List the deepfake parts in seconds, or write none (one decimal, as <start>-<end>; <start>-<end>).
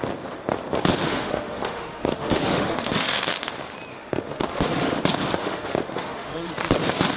1.1-3.5; 3.9-5.0; 5.4-6.5